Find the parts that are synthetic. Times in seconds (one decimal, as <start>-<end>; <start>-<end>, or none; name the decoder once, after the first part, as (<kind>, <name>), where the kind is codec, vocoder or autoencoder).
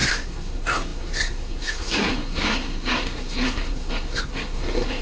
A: 0.0-5.0 (codec, SNAC)